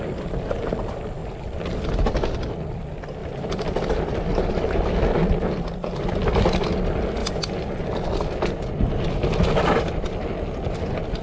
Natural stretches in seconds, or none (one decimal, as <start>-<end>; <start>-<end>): 0.0-1.2; 2.0-3.2; 4.5-11.2